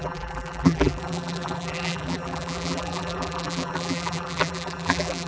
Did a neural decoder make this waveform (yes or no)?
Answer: yes